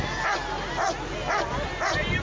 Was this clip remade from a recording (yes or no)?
no